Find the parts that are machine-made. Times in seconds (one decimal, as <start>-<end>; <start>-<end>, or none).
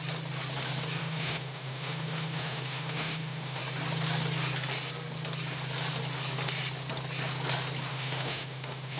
1.0-3.6; 7.9-9.0